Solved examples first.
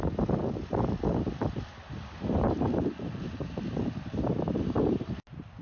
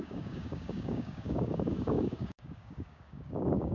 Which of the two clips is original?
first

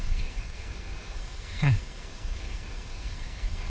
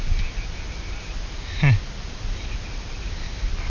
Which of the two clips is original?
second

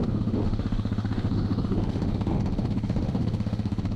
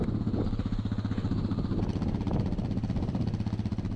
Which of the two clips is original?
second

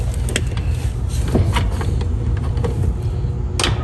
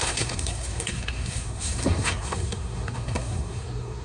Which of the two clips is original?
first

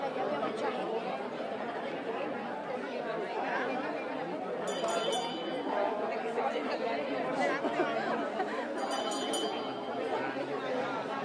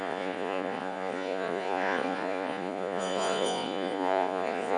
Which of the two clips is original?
first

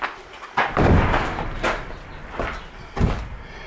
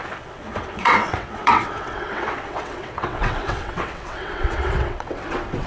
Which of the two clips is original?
first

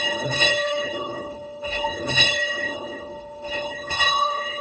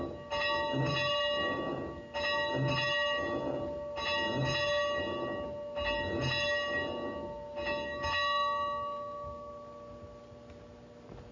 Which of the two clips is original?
second